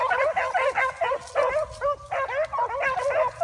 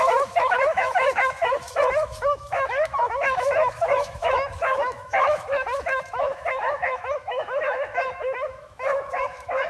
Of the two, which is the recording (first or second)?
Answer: first